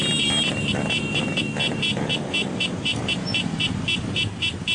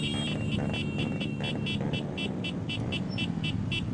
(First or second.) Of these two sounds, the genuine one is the second